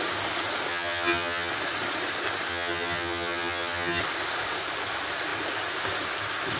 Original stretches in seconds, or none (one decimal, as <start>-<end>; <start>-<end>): 0.0-0.7; 1.5-2.5; 4.0-6.6